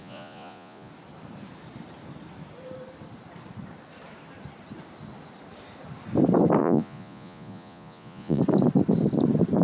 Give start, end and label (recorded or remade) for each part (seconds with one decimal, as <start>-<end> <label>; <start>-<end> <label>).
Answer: 0.0-0.9 remade; 0.9-6.6 recorded; 6.6-8.4 remade; 8.4-9.6 recorded